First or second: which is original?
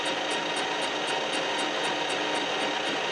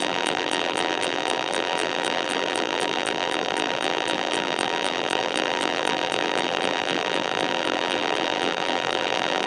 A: first